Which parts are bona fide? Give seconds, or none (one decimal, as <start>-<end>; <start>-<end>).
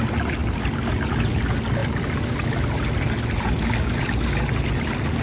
0.0-5.2